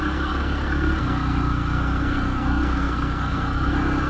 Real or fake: fake